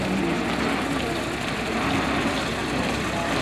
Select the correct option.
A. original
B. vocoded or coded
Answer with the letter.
A